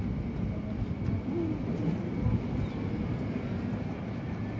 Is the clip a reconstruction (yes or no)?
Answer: no